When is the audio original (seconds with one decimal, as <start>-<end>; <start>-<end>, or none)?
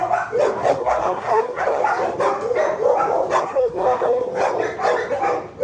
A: 0.0-0.7; 1.8-3.4; 4.3-5.6